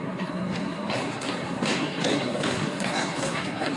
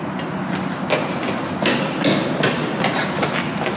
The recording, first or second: second